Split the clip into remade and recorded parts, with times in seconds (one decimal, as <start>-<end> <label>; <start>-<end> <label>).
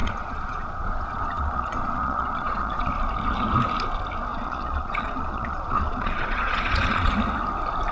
0.0-2.9 remade; 2.9-4.3 recorded; 4.3-7.1 remade; 7.1-7.9 recorded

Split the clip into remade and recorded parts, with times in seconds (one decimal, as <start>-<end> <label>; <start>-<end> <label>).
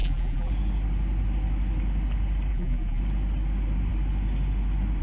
0.0-0.5 remade; 0.5-2.5 recorded; 2.5-3.0 remade; 3.0-5.0 recorded